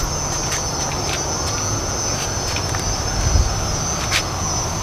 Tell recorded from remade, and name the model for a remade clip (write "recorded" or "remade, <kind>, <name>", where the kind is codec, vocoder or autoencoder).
recorded